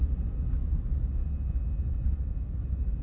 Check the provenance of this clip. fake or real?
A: real